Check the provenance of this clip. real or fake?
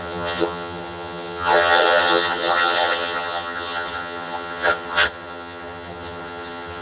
fake